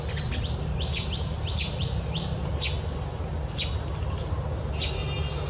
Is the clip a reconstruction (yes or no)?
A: no